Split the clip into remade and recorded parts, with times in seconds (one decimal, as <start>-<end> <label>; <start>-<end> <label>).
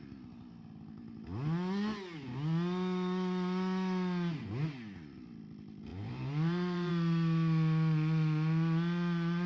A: 0.0-5.9 recorded; 5.9-6.9 remade; 6.9-9.5 recorded